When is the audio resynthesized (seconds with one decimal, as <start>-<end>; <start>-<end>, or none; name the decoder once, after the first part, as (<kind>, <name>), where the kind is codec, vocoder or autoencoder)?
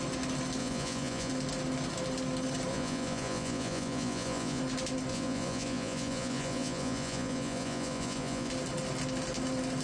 0.6-1.3 (vocoder, Vocos); 2.7-4.6; 5.1-8.5